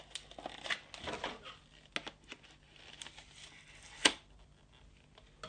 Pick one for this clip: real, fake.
real